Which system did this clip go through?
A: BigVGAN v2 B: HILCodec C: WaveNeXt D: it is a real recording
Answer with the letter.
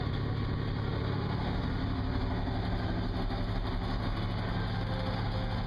D